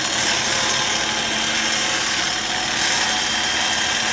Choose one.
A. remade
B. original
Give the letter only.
B